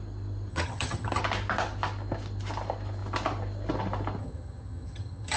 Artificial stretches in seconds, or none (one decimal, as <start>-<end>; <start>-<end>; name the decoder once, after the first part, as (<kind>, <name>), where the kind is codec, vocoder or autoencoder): 0.5-1.2 (vocoder, HiFi-GAN); 4.2-5.4

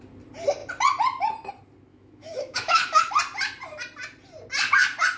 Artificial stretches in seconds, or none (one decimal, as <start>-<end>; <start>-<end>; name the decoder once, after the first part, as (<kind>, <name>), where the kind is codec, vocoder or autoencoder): 1.9-3.1 (autoencoder, DAC-VAE)